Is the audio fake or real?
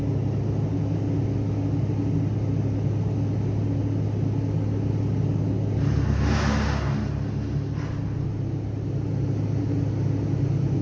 real